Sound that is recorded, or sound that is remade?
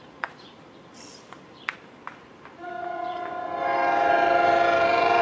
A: remade